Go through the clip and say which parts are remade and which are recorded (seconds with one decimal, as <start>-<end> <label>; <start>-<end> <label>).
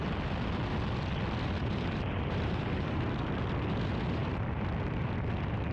0.0-1.6 recorded; 1.6-3.0 remade; 3.0-5.7 recorded